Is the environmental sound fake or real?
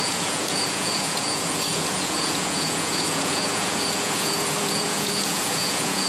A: fake